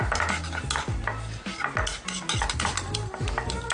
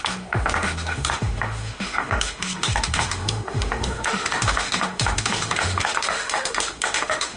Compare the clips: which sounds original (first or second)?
first